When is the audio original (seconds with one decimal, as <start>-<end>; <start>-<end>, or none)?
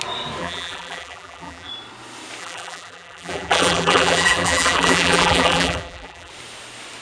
0.0-0.4; 1.7-2.4; 6.3-7.0